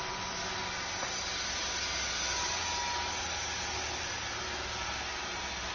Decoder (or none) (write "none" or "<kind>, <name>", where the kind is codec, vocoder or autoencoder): none